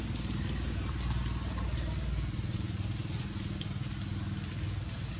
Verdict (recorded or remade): recorded